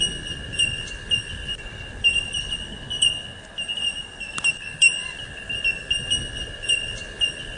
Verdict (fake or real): real